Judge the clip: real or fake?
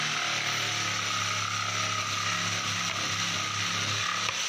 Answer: real